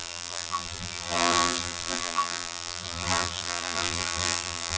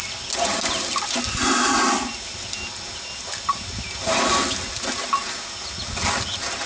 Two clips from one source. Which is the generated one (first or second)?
first